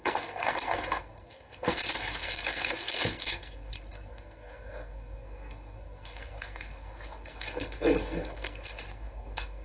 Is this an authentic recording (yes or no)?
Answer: no